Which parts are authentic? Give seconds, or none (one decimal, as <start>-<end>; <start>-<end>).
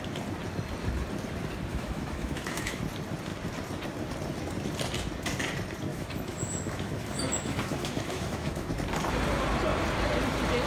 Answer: 0.0-1.7; 2.8-5.9; 8.7-10.7